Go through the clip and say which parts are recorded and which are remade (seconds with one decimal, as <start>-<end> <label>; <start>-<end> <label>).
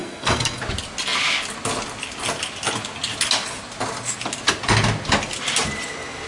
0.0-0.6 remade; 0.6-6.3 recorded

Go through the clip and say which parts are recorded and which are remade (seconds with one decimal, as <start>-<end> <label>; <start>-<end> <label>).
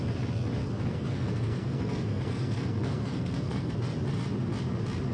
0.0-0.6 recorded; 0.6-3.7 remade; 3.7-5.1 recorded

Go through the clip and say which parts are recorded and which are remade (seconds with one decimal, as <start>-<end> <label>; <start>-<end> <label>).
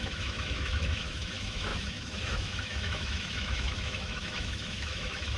0.0-5.4 remade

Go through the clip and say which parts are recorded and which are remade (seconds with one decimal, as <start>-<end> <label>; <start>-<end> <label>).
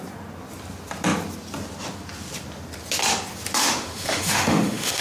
0.0-3.6 recorded; 3.6-5.0 remade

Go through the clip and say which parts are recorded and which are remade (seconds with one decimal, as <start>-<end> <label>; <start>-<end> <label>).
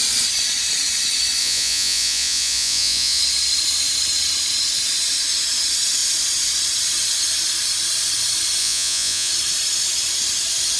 0.0-1.4 recorded; 1.4-3.2 remade; 3.2-8.6 recorded; 8.6-9.3 remade; 9.3-10.8 recorded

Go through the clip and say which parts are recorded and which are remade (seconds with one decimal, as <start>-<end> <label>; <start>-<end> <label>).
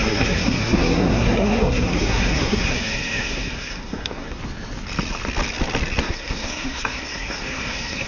0.0-4.4 remade; 4.4-6.0 recorded; 6.0-8.1 remade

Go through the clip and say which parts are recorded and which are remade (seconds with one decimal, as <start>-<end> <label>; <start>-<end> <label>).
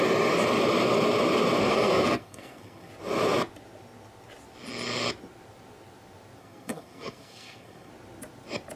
0.0-1.6 recorded; 1.6-2.9 remade; 2.9-6.4 recorded; 6.4-7.9 remade; 7.9-8.8 recorded